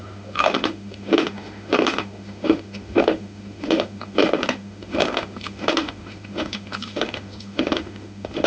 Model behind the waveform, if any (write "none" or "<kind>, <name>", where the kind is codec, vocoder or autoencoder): autoencoder, DAC-VAE